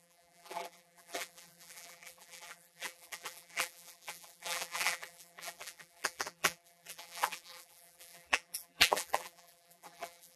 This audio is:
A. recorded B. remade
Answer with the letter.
B